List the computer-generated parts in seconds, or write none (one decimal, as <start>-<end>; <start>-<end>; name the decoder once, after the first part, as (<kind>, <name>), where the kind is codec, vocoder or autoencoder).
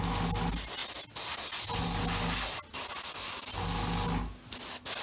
none